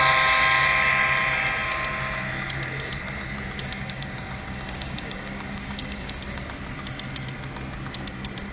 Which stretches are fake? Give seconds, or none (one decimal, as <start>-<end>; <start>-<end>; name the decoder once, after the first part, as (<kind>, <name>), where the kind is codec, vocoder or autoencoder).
3.6-6.4 (codec, DAC)